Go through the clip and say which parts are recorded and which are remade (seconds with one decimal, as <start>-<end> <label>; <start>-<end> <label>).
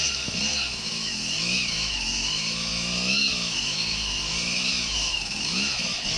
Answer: 0.0-6.2 remade